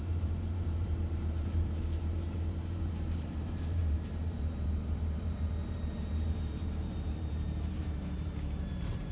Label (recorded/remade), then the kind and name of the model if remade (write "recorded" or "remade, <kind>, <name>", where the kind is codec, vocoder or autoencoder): remade, vocoder, BigVGAN v2